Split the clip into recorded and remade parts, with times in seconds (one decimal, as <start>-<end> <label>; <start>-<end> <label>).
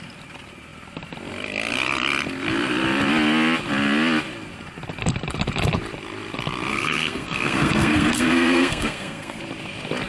0.0-6.7 recorded; 6.7-9.4 remade; 9.4-10.1 recorded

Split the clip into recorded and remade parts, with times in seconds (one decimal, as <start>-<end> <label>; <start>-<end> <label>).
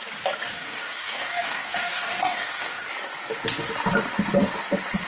0.0-0.5 recorded; 0.5-2.9 remade; 2.9-5.1 recorded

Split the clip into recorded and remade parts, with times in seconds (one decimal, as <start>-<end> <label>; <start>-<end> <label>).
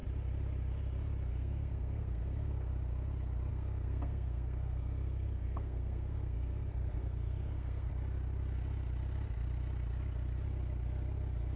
0.0-1.3 recorded; 1.3-2.7 remade; 2.7-3.5 recorded; 3.5-7.9 remade; 7.9-11.6 recorded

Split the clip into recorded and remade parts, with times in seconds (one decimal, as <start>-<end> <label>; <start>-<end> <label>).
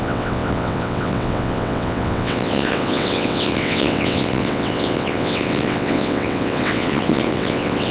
0.0-7.9 remade